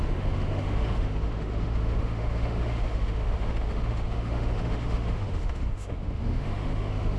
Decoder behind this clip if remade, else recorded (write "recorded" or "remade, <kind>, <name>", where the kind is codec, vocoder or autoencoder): remade, autoencoder, DAC-VAE